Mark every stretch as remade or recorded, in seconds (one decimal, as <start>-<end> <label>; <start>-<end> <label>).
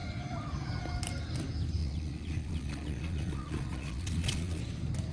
0.0-1.8 recorded; 1.8-4.6 remade; 4.6-5.1 recorded